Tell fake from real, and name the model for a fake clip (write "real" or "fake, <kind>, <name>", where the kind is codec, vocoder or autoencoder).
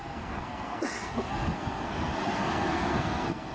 fake, codec, SNAC